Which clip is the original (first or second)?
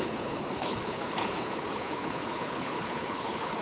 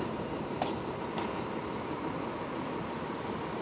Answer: second